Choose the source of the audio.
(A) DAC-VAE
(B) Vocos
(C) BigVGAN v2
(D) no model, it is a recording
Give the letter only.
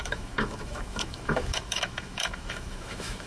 A